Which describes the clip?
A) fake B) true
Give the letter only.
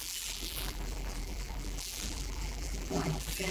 A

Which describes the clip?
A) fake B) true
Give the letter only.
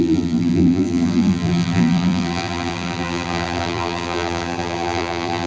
A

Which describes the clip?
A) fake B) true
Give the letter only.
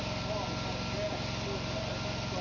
B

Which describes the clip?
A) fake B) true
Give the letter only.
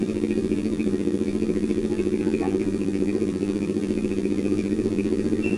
A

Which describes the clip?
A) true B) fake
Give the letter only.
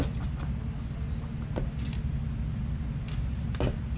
A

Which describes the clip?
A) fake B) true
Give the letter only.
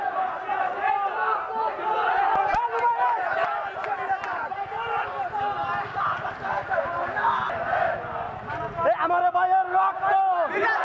B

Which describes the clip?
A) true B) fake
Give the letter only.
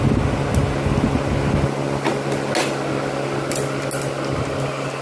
A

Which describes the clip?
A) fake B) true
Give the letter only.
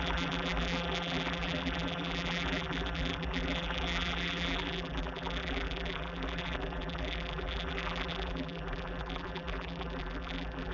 A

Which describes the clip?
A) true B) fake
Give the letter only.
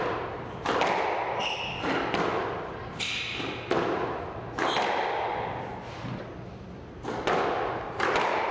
A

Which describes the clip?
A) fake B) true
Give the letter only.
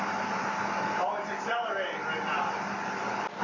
B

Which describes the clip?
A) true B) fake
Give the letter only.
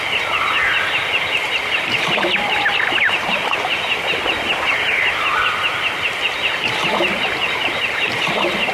B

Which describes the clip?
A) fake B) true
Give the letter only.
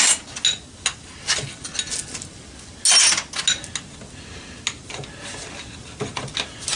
B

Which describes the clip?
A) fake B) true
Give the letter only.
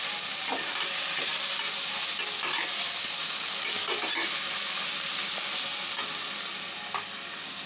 B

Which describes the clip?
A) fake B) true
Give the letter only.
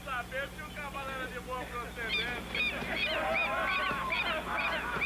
B